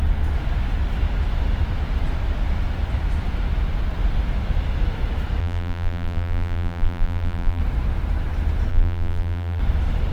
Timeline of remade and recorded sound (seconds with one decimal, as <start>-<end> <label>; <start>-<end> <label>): 0.0-5.4 recorded; 5.4-7.6 remade; 7.6-8.7 recorded; 8.7-9.6 remade; 9.6-10.1 recorded